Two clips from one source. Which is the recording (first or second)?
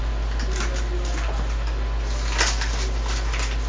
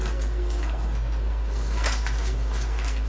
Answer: first